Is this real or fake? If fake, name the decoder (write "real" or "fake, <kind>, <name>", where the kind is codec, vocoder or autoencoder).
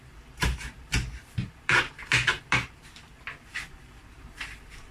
fake, vocoder, BigVGAN v2